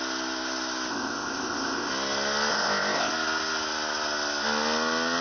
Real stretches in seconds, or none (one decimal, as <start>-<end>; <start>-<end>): 0.0-0.9; 1.9-2.5; 3.1-5.2